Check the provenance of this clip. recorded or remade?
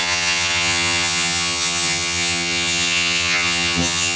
remade